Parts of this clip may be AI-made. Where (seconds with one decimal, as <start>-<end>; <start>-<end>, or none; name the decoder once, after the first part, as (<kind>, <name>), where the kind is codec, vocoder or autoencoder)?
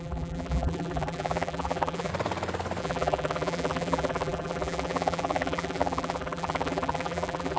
0.0-2.1 (vocoder, BigVGAN v2); 2.8-7.6